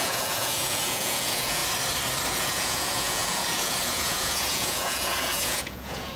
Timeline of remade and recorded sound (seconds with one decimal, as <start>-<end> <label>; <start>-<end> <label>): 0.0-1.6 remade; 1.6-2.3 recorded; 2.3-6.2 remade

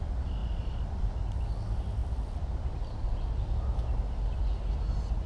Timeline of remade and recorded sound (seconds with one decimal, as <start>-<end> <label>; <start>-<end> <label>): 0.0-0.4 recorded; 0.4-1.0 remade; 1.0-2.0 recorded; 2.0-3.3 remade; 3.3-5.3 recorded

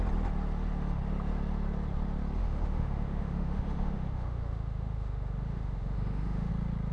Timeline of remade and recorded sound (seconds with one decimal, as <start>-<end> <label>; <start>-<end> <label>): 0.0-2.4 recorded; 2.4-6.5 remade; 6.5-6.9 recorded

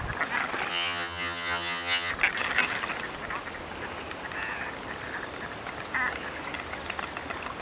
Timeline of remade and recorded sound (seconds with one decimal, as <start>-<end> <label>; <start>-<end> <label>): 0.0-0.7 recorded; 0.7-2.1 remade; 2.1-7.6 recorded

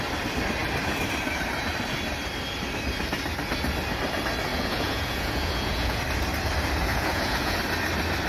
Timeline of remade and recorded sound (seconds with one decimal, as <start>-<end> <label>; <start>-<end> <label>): 0.0-4.5 recorded; 4.5-6.0 remade; 6.0-6.9 recorded; 6.9-7.6 remade; 7.6-8.3 recorded